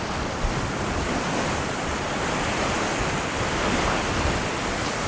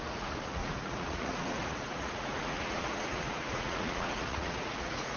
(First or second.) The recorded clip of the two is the first